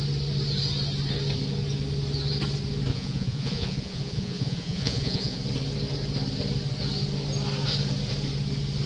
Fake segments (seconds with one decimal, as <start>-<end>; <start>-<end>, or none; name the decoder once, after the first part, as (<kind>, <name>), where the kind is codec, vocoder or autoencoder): 2.9-5.4 (vocoder, Vocos)